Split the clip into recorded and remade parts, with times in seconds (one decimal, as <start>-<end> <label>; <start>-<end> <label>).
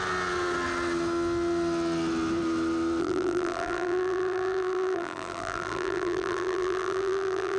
0.0-3.0 recorded; 3.0-7.6 remade